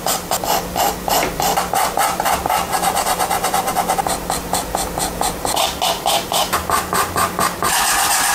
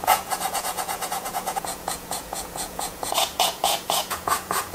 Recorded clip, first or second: first